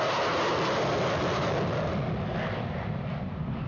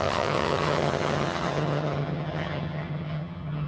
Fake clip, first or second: second